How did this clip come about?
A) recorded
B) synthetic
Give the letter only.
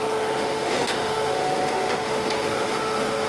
B